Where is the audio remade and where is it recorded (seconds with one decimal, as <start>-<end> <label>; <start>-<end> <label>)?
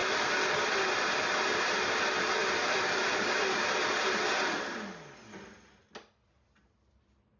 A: 0.0-2.4 recorded; 2.4-3.9 remade; 3.9-7.4 recorded